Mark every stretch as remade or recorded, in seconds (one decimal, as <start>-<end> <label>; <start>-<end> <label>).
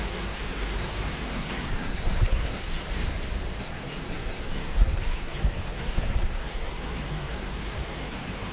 0.0-3.1 remade; 3.1-3.6 recorded; 3.6-8.5 remade